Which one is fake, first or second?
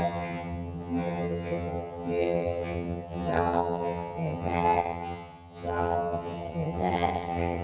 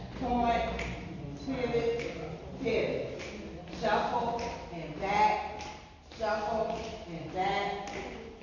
first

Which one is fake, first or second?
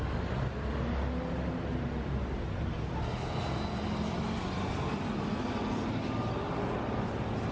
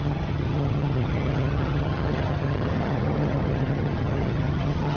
second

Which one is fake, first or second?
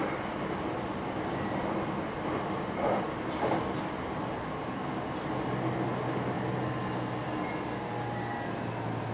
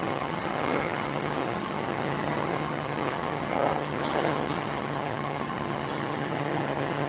second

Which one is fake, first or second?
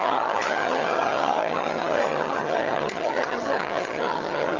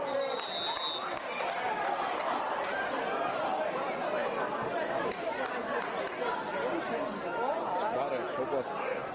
first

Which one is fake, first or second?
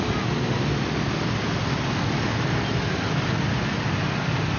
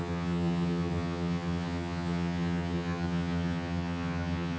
second